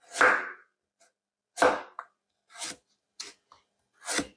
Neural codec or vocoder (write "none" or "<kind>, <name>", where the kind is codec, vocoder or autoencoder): none